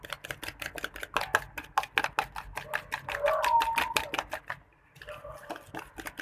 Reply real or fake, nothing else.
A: real